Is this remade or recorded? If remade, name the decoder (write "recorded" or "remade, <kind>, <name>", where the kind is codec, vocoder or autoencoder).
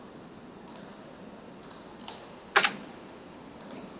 recorded